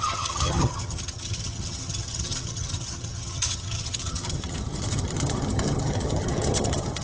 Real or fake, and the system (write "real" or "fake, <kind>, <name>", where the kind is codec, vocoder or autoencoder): fake, vocoder, HiFi-GAN